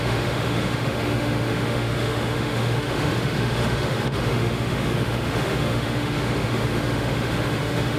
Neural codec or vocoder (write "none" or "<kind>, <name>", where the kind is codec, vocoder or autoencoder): autoencoder, DAC-VAE